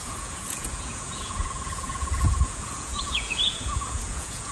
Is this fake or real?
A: fake